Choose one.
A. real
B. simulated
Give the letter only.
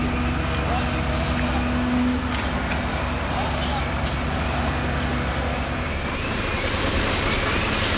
A